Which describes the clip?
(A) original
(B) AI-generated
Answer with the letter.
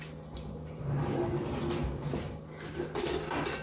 A